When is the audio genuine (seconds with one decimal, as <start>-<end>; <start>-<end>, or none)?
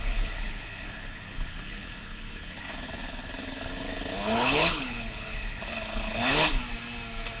6.6-7.4